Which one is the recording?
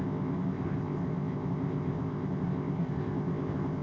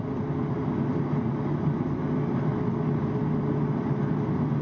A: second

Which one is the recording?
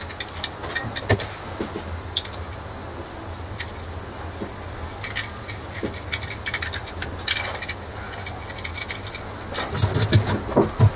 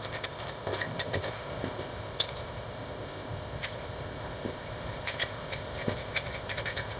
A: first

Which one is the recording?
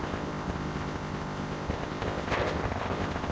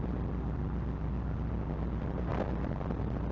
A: second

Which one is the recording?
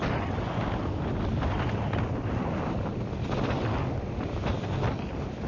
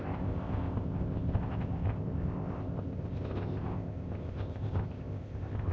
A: first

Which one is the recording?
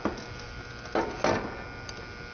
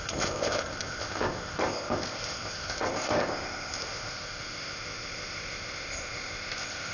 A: first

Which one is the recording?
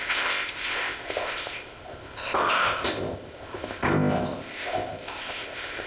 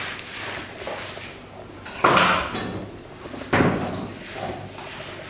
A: second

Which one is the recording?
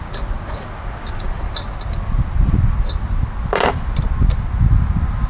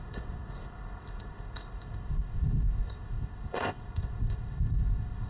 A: first